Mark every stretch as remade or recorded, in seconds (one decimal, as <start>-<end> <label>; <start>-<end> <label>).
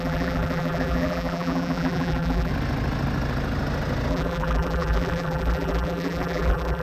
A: 0.0-2.5 remade; 2.5-4.1 recorded; 4.1-6.8 remade